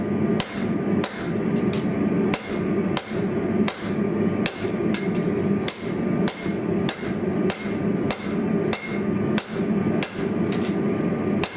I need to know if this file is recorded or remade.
recorded